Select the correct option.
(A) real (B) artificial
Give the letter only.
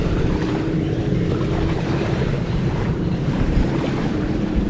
B